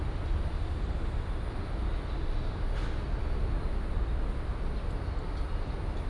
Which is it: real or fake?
real